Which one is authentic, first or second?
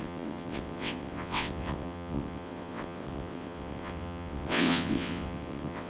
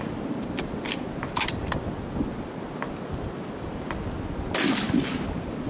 second